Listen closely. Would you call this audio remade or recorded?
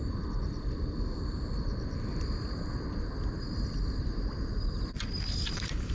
recorded